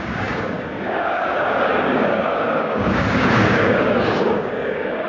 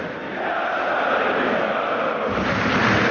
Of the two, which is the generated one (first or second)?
first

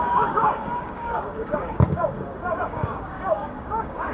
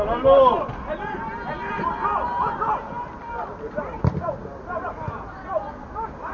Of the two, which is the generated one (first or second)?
first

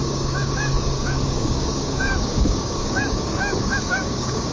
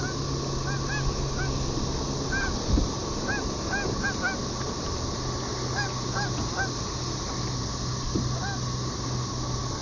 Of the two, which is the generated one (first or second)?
first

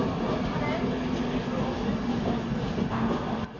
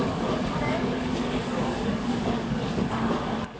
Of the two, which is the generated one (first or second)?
second